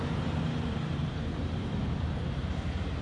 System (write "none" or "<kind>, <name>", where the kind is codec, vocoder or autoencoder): vocoder, BigVGAN v2